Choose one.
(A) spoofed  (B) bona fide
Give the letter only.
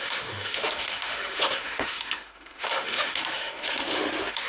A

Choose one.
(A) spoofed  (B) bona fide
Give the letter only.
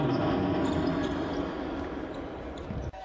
B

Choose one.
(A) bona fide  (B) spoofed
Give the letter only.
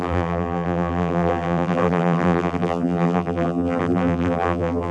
B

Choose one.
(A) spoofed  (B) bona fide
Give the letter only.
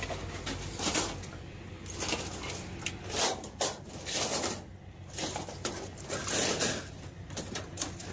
B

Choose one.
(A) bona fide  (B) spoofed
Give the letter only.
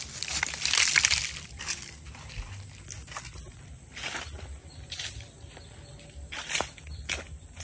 A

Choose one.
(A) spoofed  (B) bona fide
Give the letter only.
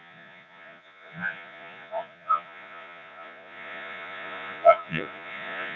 A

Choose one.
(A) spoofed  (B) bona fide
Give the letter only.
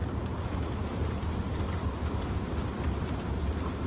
B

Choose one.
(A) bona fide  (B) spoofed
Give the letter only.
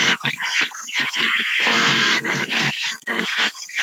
B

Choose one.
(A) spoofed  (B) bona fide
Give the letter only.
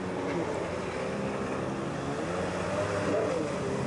B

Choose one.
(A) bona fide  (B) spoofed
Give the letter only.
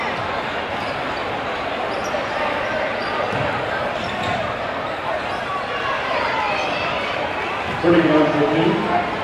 B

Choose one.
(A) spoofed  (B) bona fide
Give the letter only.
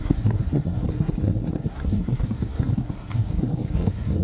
A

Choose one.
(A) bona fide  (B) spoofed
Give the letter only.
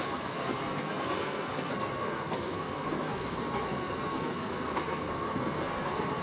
B